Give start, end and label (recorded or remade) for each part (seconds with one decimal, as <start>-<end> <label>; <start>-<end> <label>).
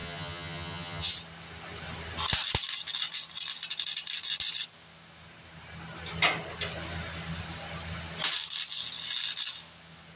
0.0-1.1 remade; 1.1-10.2 recorded